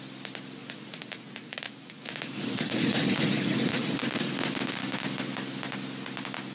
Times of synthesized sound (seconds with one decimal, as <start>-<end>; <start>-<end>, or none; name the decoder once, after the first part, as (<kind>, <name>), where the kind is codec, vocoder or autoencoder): 0.6-4.5 (vocoder, Vocos)

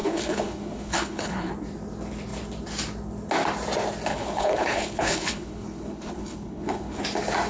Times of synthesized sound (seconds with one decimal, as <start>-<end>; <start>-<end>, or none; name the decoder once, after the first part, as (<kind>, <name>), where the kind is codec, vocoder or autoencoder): 0.0-1.5 (codec, HILCodec); 4.1-7.0

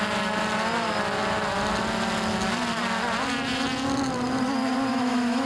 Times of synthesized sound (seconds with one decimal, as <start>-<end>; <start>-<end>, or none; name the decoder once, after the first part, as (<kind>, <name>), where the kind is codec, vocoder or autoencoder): 4.9-5.5 (autoencoder, DAC-VAE)

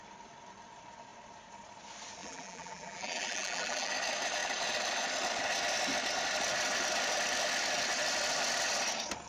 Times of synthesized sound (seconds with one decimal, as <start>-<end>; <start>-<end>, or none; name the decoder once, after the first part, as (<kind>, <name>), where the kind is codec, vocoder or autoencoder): 2.2-3.9 (vocoder, BigVGAN v2)

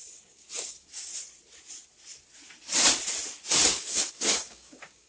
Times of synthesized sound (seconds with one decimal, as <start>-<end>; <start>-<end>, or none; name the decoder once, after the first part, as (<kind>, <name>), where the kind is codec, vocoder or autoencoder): 0.0-1.1 (codec, DAC); 3.7-5.1

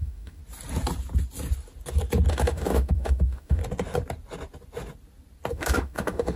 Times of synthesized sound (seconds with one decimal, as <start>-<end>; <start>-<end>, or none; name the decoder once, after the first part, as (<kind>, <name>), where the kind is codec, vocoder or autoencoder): 0.0-0.4 (autoencoder, DAC-VAE); 2.3-3.6; 5.5-6.4

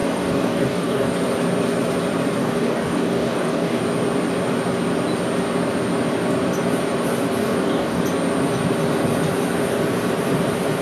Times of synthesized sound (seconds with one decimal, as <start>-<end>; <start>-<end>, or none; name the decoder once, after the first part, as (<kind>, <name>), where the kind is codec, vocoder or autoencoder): 0.0-1.1 (codec, DAC); 2.4-3.8; 7.4-8.0